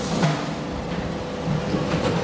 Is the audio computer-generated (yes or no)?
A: no